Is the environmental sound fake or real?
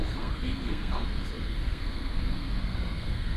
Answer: fake